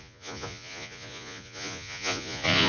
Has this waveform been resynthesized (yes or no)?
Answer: yes